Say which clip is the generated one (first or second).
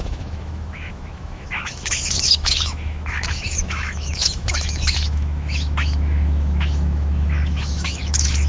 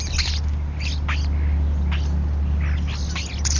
first